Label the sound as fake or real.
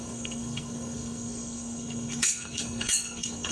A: fake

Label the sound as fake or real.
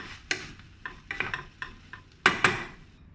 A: real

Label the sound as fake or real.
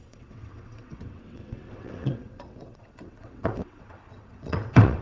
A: fake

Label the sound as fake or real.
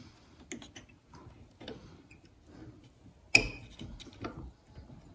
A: real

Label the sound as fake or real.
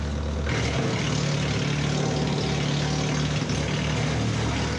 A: real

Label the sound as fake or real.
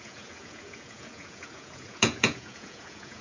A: fake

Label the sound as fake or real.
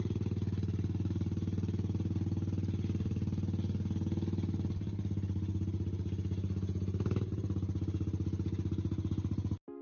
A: real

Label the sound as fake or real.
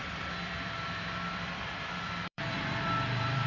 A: fake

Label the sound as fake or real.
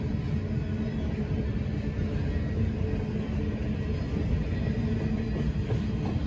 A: real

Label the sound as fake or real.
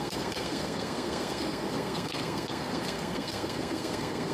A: fake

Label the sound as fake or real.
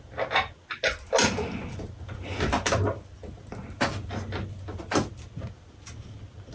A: real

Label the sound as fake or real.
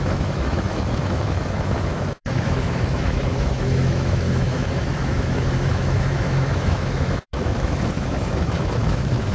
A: fake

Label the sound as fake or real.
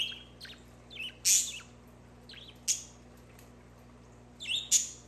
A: real